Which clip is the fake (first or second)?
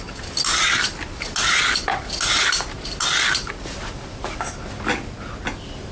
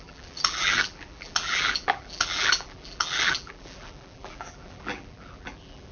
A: second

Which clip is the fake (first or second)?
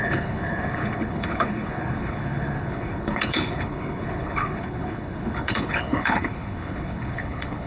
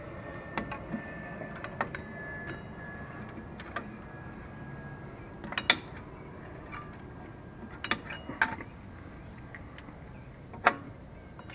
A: first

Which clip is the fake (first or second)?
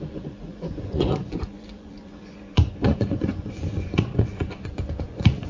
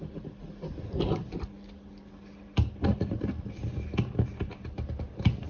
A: first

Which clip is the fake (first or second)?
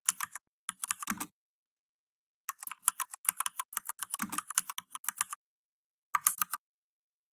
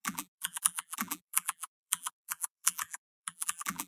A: second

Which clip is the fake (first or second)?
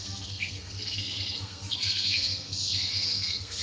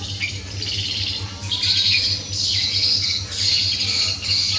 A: first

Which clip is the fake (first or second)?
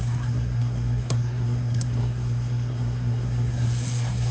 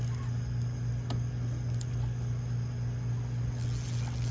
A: first